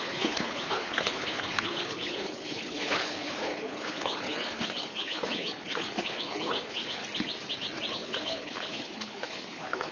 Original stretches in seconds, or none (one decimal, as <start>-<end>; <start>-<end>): 7.0-7.9